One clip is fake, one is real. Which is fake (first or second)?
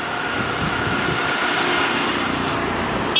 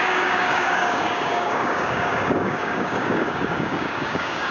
second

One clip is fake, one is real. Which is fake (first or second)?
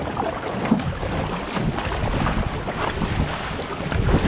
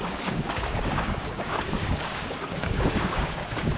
second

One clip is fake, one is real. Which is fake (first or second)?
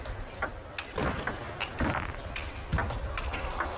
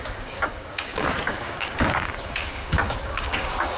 second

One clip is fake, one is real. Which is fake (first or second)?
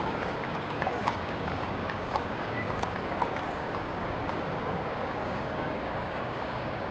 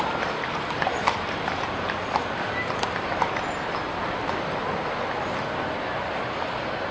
first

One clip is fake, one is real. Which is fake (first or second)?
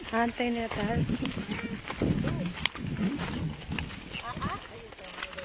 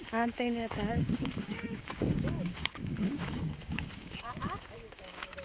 second